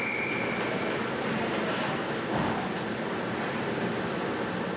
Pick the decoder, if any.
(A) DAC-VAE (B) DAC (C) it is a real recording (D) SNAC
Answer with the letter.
C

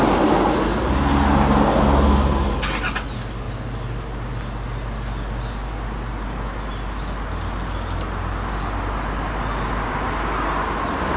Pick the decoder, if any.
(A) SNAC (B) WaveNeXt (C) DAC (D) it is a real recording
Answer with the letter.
D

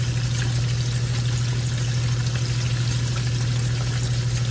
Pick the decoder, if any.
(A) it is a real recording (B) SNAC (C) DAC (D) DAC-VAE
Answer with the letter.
A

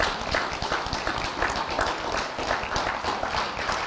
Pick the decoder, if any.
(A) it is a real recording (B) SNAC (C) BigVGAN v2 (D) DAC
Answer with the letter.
A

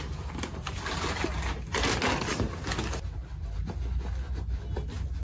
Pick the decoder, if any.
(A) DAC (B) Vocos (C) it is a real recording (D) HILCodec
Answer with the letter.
C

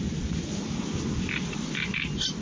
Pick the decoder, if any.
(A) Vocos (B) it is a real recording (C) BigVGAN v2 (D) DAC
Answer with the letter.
B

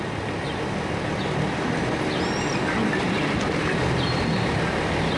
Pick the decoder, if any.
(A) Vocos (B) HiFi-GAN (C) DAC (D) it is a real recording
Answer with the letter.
D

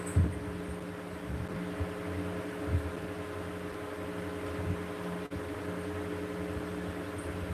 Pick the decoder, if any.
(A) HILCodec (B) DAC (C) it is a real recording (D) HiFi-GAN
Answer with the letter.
C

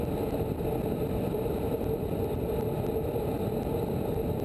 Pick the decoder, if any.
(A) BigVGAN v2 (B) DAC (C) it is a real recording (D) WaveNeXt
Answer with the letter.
C